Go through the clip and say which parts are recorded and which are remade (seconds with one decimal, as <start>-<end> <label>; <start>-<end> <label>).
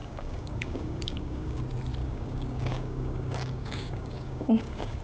0.0-1.6 remade; 1.6-2.0 recorded; 2.0-5.0 remade